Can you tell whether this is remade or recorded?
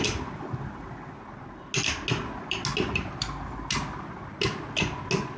recorded